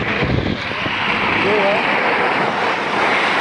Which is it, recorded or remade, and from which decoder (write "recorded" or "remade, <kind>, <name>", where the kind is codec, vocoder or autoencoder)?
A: recorded